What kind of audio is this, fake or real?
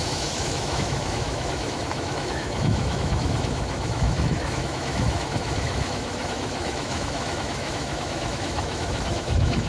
fake